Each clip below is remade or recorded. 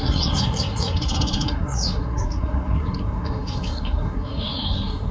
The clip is remade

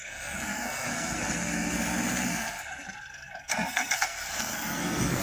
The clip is remade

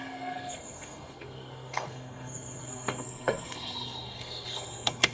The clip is remade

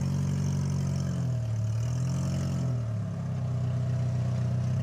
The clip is recorded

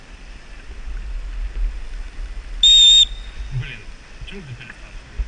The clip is recorded